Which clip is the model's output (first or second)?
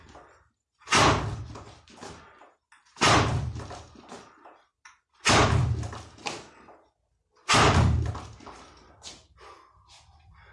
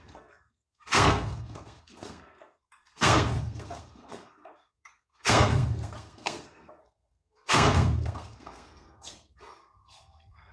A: second